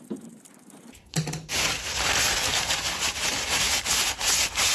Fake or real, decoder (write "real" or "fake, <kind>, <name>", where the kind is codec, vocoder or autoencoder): fake, vocoder, BigVGAN v2